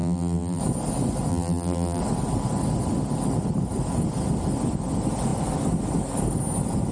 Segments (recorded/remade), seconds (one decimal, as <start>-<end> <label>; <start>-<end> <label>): 0.0-0.6 remade; 0.6-1.3 recorded; 1.3-2.0 remade; 2.0-6.9 recorded